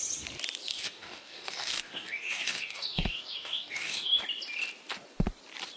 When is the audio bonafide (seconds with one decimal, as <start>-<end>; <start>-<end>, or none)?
0.0-0.7; 4.2-5.8